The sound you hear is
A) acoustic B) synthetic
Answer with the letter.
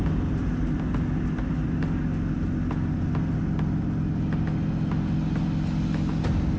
A